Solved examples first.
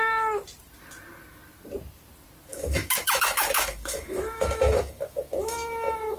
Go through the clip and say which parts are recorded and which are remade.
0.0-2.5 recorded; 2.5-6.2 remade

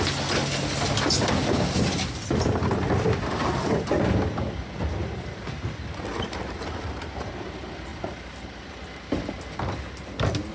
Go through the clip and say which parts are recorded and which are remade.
0.0-6.1 recorded; 6.1-7.3 remade; 7.3-7.9 recorded; 7.9-8.7 remade; 8.7-10.5 recorded

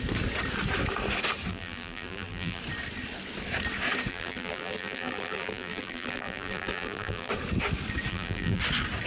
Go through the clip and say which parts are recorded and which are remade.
0.0-1.5 recorded; 1.5-2.6 remade; 2.6-4.1 recorded; 4.1-7.3 remade; 7.3-8.1 recorded; 8.1-8.6 remade; 8.6-9.1 recorded

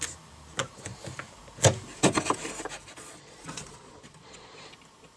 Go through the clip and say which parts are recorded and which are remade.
0.0-2.9 recorded; 2.9-4.7 remade; 4.7-5.2 recorded

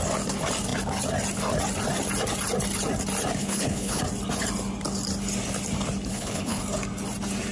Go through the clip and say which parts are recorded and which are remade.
0.0-3.4 recorded; 3.4-4.0 remade; 4.0-6.1 recorded; 6.1-6.6 remade; 6.6-7.5 recorded

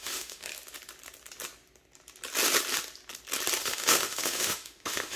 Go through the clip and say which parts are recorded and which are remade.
0.0-0.5 remade; 0.5-3.6 recorded; 3.6-5.2 remade